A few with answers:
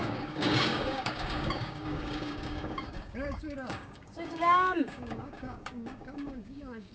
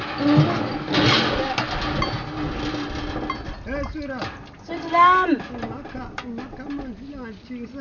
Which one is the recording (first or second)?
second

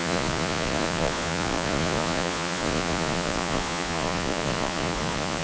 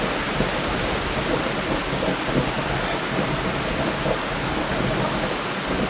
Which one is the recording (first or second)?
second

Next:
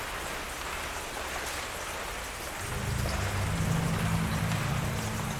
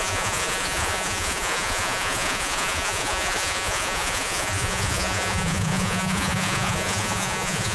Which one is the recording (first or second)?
first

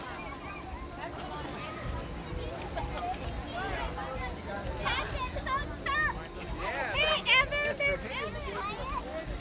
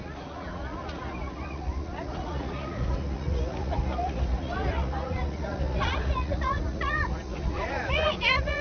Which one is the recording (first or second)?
first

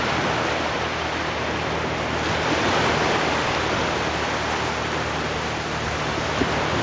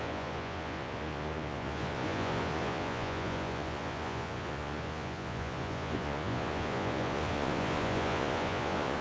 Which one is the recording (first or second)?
first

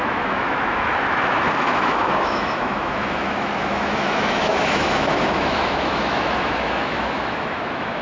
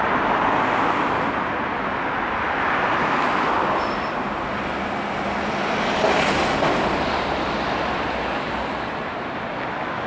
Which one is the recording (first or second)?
second